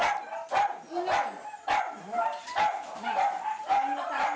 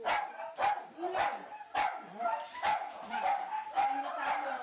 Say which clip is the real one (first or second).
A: first